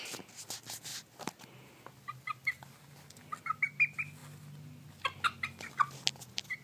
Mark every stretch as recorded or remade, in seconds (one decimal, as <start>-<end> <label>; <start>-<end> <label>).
0.0-6.6 recorded